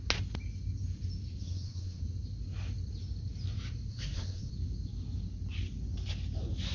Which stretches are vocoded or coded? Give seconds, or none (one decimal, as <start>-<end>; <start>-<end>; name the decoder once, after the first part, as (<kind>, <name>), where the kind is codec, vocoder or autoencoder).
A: 1.4-2.0 (codec, SNAC); 3.9-4.5